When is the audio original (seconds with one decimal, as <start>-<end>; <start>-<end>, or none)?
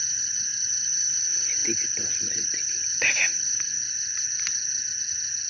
0.0-5.5